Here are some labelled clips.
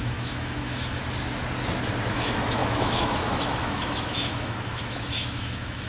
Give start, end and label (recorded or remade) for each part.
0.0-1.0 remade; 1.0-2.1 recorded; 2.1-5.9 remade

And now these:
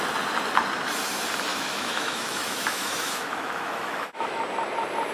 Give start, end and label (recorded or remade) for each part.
0.0-1.5 recorded; 1.5-4.4 remade; 4.4-5.1 recorded

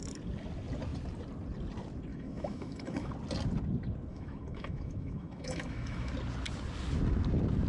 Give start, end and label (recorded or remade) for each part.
0.0-2.1 recorded; 2.1-3.1 remade; 3.1-4.1 recorded; 4.1-6.1 remade; 6.1-7.7 recorded